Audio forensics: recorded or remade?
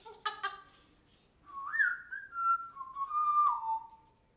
recorded